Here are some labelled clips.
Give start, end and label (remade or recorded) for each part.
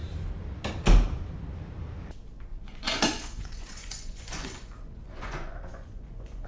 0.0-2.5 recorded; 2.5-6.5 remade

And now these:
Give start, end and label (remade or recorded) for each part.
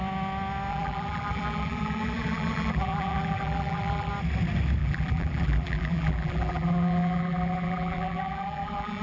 0.0-0.7 recorded; 0.7-4.1 remade; 4.1-4.8 recorded; 4.8-9.0 remade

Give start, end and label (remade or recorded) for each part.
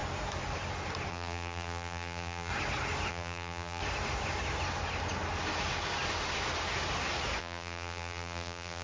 0.0-1.1 recorded; 1.1-2.5 remade; 2.5-3.1 recorded; 3.1-3.8 remade; 3.8-7.4 recorded; 7.4-8.8 remade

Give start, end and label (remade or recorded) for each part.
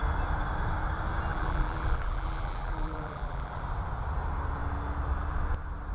0.0-1.3 recorded; 1.3-3.6 remade; 3.6-5.9 recorded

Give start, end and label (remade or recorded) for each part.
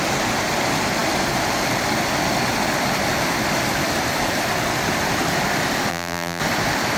0.0-5.9 recorded; 5.9-6.4 remade; 6.4-7.0 recorded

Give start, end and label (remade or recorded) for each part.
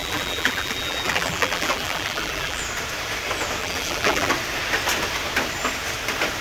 0.0-2.6 remade; 2.6-3.6 recorded; 3.6-4.3 remade; 4.3-6.4 recorded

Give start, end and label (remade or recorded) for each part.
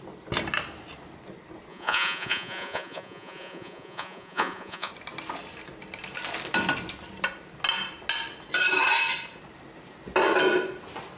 0.0-1.7 recorded; 1.7-4.9 remade; 4.9-11.2 recorded